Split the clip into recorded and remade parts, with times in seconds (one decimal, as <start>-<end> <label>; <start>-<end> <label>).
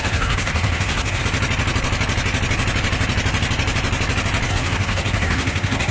0.0-1.2 remade; 1.2-4.5 recorded; 4.5-5.9 remade